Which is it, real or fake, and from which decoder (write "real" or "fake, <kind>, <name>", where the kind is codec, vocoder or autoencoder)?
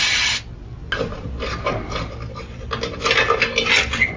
real